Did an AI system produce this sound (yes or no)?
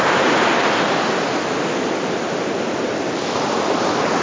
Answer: no